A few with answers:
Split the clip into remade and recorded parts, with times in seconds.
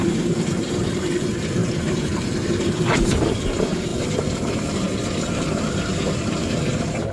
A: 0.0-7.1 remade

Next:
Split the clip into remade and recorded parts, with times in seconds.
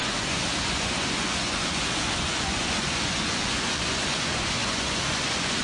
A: 0.0-5.6 remade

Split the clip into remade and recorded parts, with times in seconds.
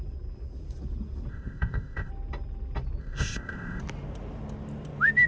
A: 0.0-1.3 recorded; 1.3-2.1 remade; 2.1-3.0 recorded; 3.0-3.8 remade; 3.8-5.3 recorded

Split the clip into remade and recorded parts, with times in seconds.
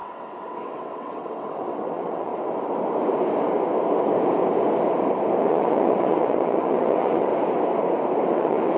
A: 0.0-2.3 remade; 2.3-5.4 recorded; 5.4-7.3 remade; 7.3-8.3 recorded; 8.3-8.8 remade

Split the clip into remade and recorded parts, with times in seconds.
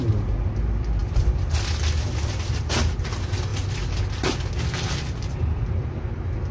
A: 0.0-6.5 recorded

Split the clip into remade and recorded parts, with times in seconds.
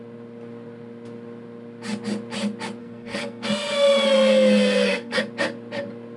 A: 0.0-2.8 recorded; 2.8-5.2 remade; 5.2-6.2 recorded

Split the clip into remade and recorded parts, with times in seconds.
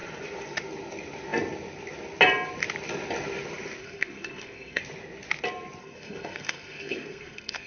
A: 0.0-3.8 recorded; 3.8-4.8 remade; 4.8-5.8 recorded; 5.8-7.7 remade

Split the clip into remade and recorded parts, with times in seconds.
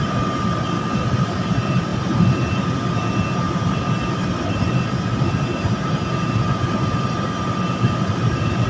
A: 0.0-8.7 recorded